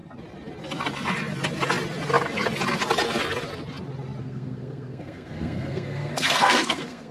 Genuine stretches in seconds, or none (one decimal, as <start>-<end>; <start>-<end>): 0.0-4.2